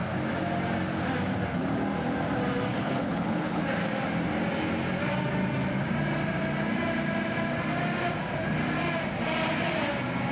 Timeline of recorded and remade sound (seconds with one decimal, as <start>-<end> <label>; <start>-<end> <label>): 0.0-2.7 recorded; 2.7-3.6 remade; 3.6-10.3 recorded